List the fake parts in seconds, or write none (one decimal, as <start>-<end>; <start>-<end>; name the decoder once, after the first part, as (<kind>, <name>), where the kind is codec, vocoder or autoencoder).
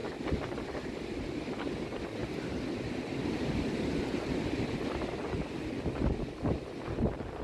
2.2-4.7 (vocoder, BigVGAN v2)